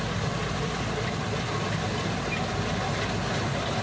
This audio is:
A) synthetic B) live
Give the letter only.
B